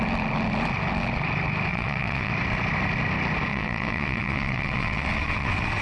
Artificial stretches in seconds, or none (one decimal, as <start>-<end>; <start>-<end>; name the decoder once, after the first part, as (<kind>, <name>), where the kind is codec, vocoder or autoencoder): 1.7-2.3 (vocoder, WaveNeXt); 3.5-5.8